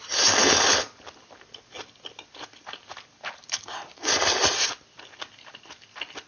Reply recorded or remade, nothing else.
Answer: recorded